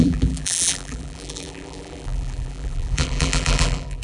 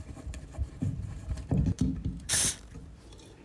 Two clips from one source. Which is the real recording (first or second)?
second